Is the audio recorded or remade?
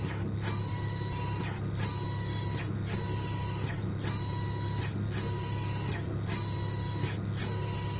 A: recorded